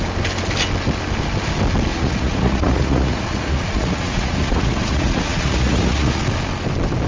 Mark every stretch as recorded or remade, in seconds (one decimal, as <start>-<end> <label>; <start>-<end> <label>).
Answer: 0.0-1.9 recorded; 1.9-6.2 remade; 6.2-7.1 recorded